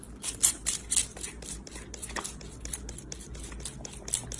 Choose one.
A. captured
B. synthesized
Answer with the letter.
A